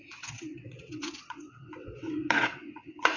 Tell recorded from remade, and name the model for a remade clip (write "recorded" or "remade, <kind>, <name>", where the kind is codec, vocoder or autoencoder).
remade, vocoder, WaveNeXt